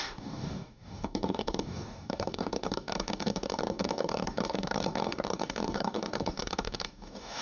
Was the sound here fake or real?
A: fake